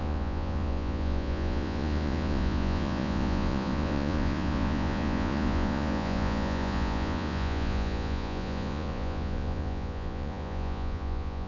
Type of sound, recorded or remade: remade